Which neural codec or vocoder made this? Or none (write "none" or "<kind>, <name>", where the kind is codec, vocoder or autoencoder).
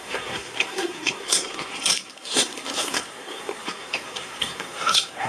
codec, SNAC